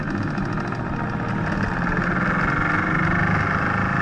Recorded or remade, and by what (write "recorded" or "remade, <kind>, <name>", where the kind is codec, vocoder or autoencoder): recorded